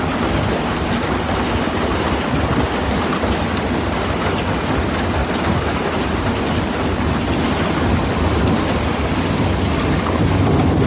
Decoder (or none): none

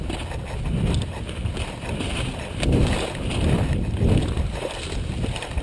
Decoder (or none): none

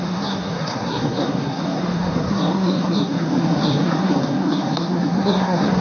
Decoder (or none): codec, SNAC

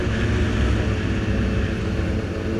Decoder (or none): none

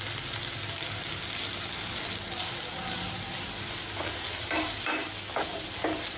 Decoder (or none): none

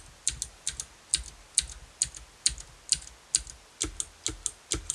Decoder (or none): none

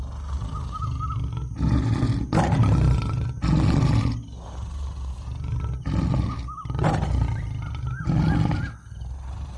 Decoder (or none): none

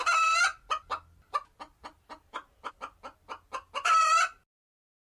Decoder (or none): none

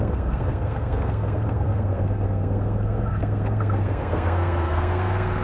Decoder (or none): codec, SNAC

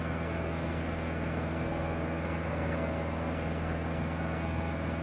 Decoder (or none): codec, SNAC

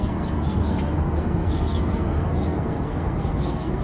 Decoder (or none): codec, SNAC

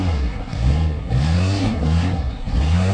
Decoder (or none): codec, SNAC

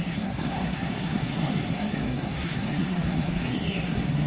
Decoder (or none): codec, SNAC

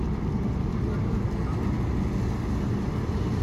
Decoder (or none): none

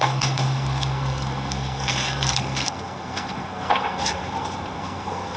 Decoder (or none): codec, SNAC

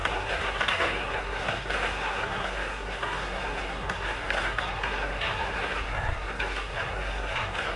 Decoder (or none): codec, SNAC